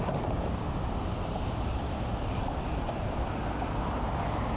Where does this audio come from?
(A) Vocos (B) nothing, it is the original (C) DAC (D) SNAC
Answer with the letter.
B